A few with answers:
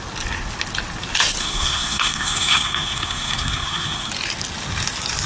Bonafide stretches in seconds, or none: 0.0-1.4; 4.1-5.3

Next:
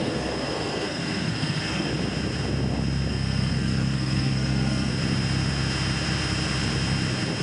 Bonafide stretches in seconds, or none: 1.9-3.1; 4.9-7.4

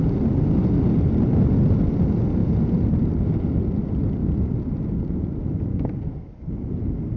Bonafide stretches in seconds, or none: 0.0-5.7; 6.5-7.2

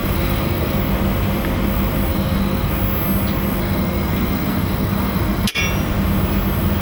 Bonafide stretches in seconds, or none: 0.8-2.1; 2.7-3.6; 5.5-6.8

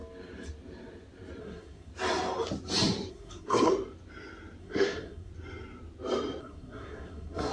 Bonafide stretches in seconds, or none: 0.0-1.4; 1.9-3.1; 3.7-4.6; 5.3-6.4

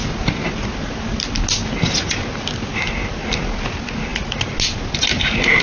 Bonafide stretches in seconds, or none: 0.0-5.6

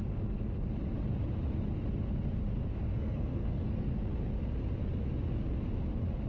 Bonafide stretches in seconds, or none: 0.0-2.9; 3.9-6.3